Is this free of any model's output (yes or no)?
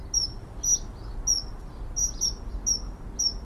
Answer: yes